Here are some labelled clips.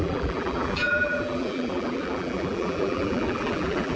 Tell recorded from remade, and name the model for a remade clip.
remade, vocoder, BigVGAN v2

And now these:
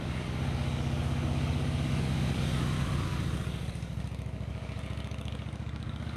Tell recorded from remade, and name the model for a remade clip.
remade, codec, DAC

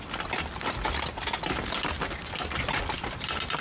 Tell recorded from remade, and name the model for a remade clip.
recorded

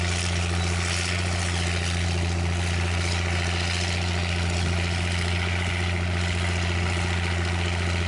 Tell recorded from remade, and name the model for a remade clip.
recorded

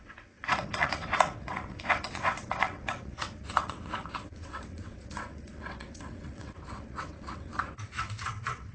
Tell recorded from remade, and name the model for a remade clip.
remade, vocoder, WaveNeXt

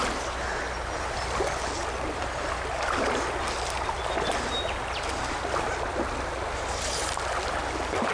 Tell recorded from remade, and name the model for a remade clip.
recorded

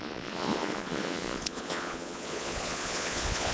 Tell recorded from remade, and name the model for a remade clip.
remade, vocoder, Vocos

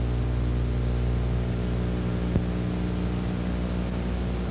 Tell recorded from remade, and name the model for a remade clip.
recorded